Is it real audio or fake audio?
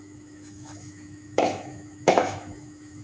fake